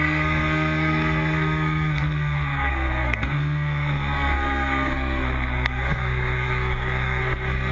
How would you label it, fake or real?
fake